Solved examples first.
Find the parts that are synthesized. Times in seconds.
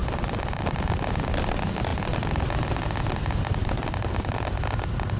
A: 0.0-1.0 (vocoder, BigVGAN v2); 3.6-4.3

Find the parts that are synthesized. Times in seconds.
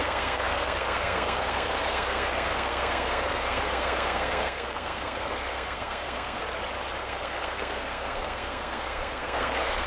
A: 0.0-6.4 (codec, SNAC); 7.0-9.9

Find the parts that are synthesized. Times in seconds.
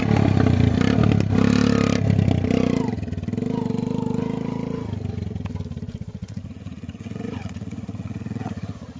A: 6.2-9.0 (vocoder, Vocos)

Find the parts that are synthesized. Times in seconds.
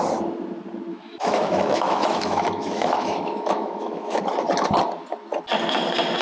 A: 0.9-4.2 (autoencoder, DAC-VAE)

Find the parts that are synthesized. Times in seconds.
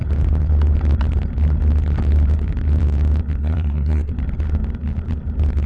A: 3.4-4.1 (codec, SNAC)